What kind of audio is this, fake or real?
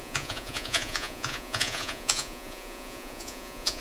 fake